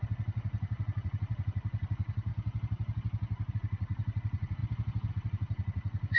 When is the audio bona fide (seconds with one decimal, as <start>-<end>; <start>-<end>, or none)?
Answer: 2.3-3.5; 4.6-5.1

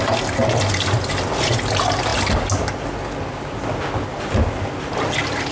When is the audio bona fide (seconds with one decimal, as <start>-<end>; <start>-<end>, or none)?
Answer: 0.0-5.5

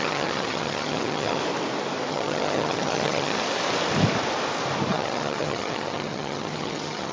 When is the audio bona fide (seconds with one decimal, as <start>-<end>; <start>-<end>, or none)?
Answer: 1.4-2.1; 3.4-4.9

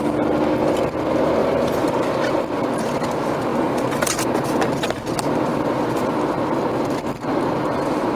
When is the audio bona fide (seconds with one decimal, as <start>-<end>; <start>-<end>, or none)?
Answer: 0.0-8.2

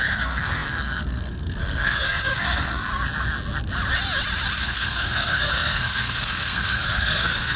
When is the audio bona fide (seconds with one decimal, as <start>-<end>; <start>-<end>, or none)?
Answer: 2.9-4.6

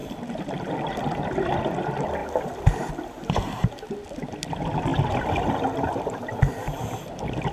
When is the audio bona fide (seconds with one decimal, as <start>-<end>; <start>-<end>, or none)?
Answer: 1.5-2.2; 2.9-4.9; 7.1-7.5

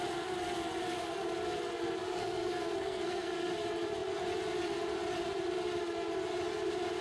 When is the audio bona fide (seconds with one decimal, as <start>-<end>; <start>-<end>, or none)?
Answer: 0.0-2.0; 3.5-7.0